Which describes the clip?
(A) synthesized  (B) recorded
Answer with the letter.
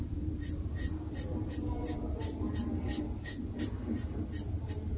B